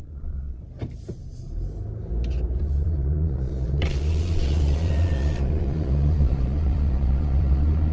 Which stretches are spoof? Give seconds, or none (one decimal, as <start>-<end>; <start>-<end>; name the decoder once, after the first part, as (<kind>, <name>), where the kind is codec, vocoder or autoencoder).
0.0-0.6 (vocoder, Vocos); 2.6-7.9